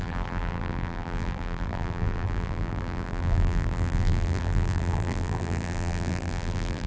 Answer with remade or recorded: remade